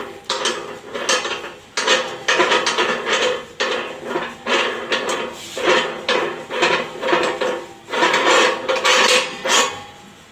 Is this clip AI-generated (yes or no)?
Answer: no